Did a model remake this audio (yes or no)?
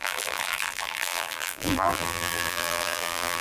yes